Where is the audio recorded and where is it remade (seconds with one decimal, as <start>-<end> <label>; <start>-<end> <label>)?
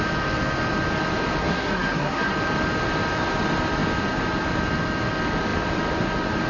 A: 0.0-1.4 recorded; 1.4-2.3 remade; 2.3-6.5 recorded